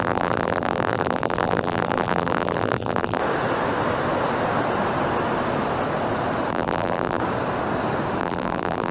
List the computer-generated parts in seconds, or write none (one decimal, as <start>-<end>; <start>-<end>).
0.0-3.2; 6.5-7.2; 8.2-8.9

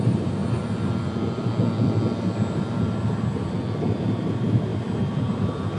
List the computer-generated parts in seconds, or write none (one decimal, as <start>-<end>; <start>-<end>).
0.0-0.4; 3.9-4.7

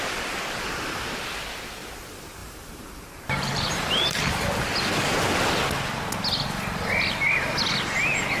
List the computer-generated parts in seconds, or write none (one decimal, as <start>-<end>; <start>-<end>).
2.4-4.2

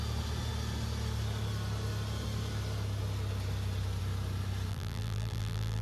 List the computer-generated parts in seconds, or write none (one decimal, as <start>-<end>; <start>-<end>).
4.7-5.8

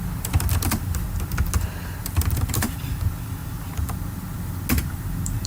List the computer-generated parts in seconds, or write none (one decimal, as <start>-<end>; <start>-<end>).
0.0-1.3; 2.0-3.4; 4.9-5.5